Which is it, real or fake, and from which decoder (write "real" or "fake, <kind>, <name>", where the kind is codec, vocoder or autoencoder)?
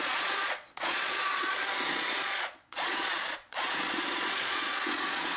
fake, vocoder, Vocos